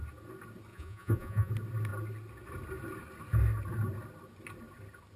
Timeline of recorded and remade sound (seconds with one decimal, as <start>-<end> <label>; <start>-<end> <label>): 0.0-0.7 recorded; 0.7-1.5 remade; 1.5-5.2 recorded